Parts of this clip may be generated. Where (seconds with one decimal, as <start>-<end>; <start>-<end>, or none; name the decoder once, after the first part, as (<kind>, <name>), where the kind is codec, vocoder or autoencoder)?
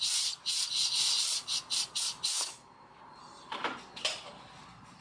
2.3-3.0 (autoencoder, DAC-VAE)